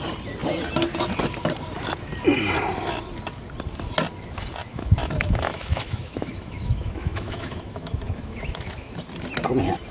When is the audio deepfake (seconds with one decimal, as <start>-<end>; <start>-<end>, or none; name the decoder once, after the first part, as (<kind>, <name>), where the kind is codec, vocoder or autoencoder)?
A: 4.6-9.0 (autoencoder, DAC-VAE)